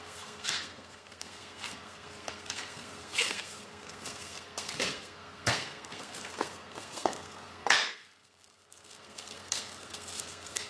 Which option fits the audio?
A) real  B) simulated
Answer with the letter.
B